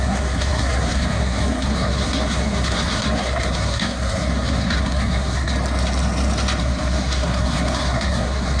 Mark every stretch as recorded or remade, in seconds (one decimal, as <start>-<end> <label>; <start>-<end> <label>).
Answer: 0.0-5.5 remade; 5.5-6.6 recorded; 6.6-8.6 remade